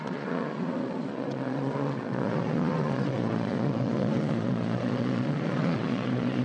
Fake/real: fake